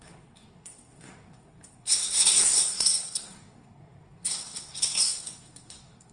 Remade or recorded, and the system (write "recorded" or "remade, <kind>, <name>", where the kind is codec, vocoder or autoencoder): remade, codec, SNAC